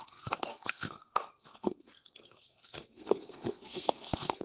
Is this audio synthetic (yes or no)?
yes